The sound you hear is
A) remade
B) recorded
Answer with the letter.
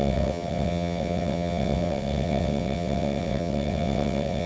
A